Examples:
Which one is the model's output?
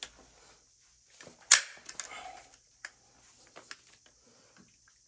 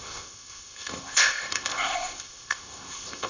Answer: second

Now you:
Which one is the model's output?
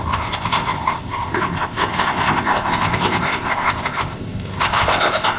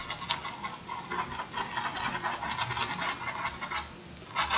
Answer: first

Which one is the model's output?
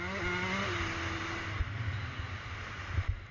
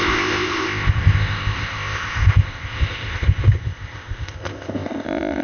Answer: second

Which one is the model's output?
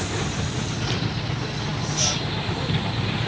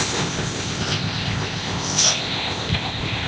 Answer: second